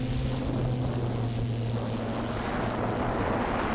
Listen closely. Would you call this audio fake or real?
real